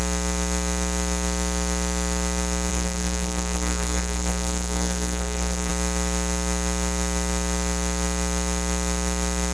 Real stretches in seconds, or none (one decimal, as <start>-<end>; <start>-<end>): 0.0-2.7; 5.7-9.5